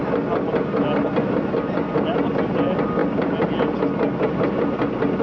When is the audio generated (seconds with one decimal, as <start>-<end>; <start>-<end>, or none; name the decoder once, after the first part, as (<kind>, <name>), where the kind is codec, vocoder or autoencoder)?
none